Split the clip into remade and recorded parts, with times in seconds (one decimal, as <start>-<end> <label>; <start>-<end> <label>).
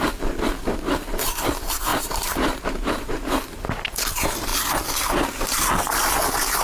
0.0-1.9 recorded; 1.9-3.1 remade; 3.1-6.6 recorded